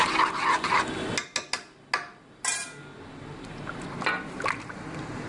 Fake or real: real